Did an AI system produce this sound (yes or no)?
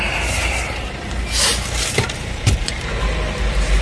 no